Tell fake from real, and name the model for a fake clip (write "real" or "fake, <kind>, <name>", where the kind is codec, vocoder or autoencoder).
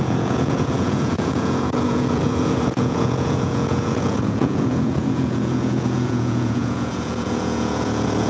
fake, vocoder, Vocos